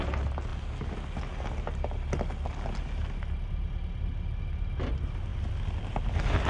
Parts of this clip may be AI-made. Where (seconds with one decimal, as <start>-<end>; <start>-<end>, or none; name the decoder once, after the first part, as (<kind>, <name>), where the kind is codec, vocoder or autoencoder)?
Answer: none